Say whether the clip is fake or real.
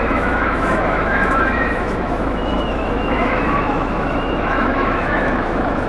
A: fake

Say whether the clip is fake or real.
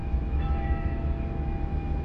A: fake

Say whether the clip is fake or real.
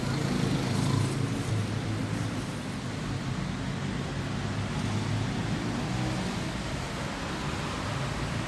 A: real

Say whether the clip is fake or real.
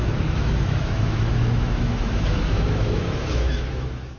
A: fake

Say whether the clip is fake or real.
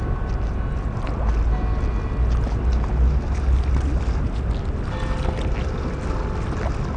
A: real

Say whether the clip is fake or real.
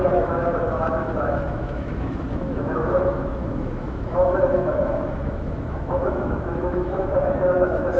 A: fake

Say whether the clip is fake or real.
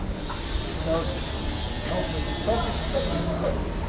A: real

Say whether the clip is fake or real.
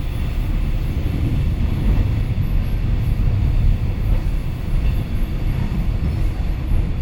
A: real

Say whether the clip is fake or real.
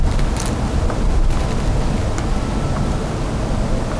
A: real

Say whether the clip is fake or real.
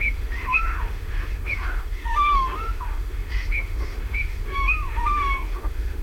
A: fake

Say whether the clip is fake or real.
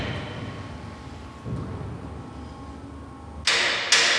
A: real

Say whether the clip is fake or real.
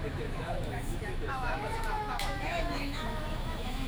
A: fake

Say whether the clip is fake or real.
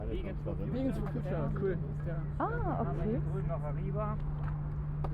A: real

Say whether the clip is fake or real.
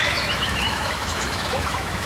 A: fake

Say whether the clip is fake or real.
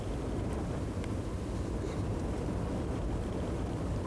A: real